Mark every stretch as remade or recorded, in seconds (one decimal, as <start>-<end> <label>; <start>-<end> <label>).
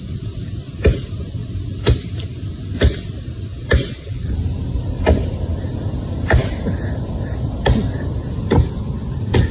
0.0-9.5 recorded